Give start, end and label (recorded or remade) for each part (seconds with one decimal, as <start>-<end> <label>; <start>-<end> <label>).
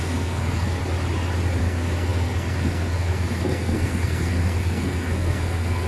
0.0-0.8 remade; 0.8-1.6 recorded; 1.6-5.9 remade